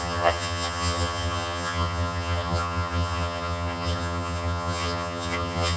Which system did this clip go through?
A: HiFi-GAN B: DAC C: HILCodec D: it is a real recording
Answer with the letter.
A